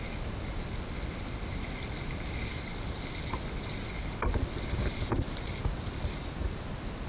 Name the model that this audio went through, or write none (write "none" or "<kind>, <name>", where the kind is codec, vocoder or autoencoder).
none